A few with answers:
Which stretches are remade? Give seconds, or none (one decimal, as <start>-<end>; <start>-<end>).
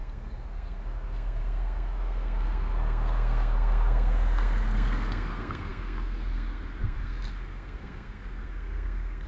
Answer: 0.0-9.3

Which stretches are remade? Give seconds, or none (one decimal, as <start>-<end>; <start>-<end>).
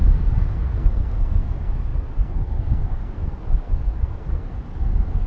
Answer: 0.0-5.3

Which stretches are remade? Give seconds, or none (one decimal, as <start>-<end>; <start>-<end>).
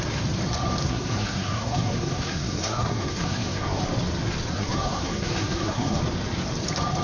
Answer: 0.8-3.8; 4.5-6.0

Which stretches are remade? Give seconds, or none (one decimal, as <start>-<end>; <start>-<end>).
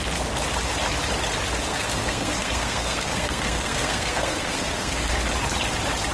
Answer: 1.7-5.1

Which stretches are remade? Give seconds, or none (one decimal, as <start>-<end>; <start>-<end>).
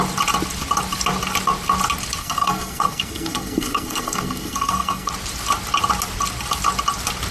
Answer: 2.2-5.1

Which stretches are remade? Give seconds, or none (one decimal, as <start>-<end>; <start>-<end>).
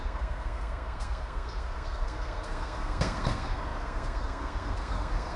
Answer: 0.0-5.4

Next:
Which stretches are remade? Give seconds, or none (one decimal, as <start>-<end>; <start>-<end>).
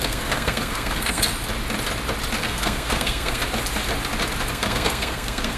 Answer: 0.0-1.3; 2.4-3.4; 4.5-5.6